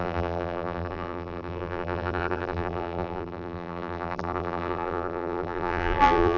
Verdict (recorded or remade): remade